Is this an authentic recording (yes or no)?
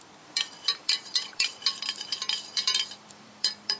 no